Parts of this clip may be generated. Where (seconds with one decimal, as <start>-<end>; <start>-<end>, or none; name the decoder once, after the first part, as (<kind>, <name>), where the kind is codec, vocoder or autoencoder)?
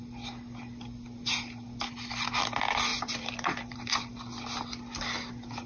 2.9-3.9 (vocoder, BigVGAN v2)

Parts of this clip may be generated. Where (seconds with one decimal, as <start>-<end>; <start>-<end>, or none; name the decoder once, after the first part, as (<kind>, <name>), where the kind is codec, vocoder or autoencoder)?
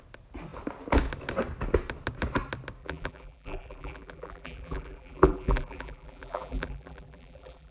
2.8-7.7 (vocoder, BigVGAN v2)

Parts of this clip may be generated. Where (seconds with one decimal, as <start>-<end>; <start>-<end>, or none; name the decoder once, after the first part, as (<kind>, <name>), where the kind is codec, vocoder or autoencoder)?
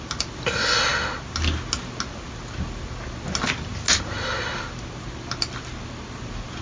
none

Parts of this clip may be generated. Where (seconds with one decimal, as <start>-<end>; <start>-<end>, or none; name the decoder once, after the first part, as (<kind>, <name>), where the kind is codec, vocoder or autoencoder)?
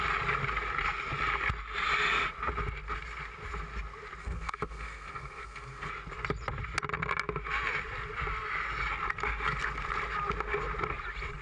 4.2-5.9 (codec, SNAC)